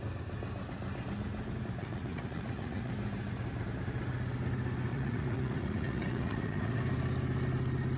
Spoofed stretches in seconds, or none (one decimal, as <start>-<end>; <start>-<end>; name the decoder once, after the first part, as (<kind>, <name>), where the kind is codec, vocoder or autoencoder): 1.8-2.9 (vocoder, Vocos); 4.9-6.8